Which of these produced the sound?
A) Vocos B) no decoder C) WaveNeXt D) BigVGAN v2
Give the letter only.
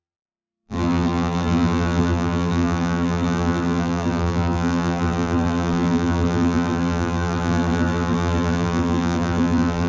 D